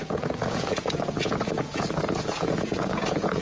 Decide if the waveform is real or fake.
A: fake